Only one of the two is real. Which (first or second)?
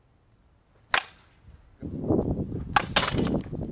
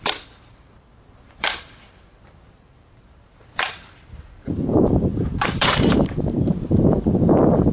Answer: first